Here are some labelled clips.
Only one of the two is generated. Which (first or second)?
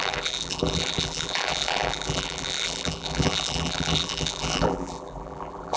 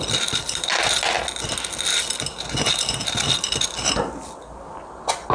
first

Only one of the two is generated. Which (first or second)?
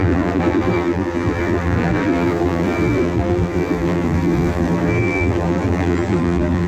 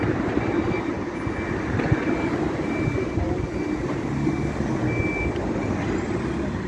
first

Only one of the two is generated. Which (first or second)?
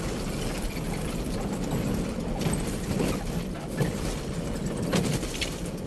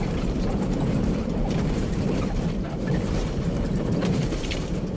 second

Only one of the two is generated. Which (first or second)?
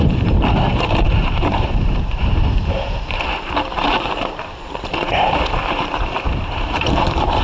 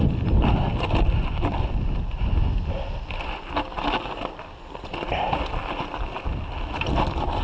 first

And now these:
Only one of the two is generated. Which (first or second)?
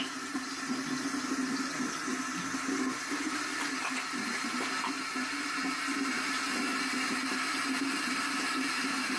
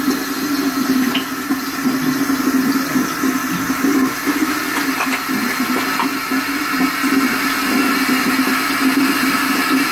first